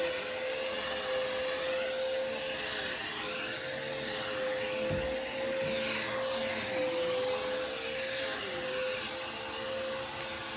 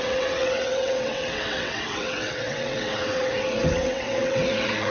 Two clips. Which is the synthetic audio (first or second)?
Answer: second